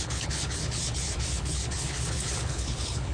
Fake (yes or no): yes